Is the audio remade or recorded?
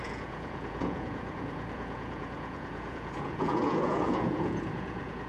remade